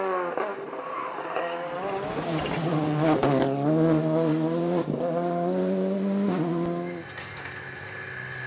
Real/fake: real